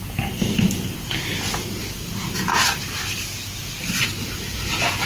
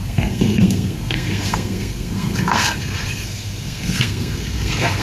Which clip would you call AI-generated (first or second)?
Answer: second